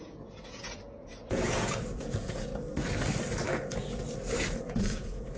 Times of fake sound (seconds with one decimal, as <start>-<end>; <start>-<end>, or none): 0.0-2.5; 4.6-5.4